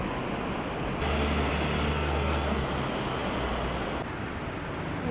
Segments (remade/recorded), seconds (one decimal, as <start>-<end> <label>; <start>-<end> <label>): 0.0-1.9 recorded; 1.9-2.6 remade; 2.6-5.1 recorded